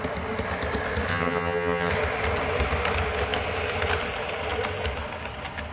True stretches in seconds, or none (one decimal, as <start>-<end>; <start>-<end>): 0.0-1.1; 1.9-5.7